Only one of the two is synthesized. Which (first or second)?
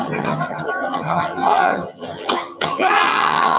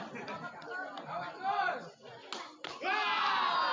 first